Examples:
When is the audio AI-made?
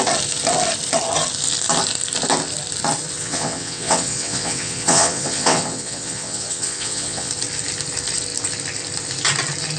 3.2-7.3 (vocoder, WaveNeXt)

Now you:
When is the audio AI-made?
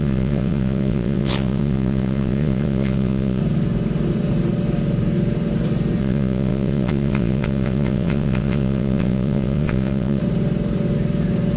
0.0-3.4 (vocoder, WaveNeXt); 6.0-10.2